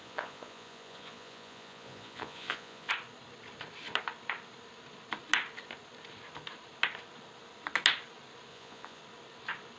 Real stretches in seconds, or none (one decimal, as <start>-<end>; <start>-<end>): 2.9-8.5; 9.0-9.8